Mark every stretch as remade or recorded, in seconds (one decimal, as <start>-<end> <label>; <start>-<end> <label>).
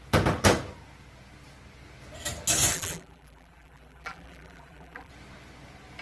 0.0-2.7 recorded; 2.7-5.1 remade; 5.1-6.0 recorded